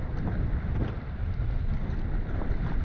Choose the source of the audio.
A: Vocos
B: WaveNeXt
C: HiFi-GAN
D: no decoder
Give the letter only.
D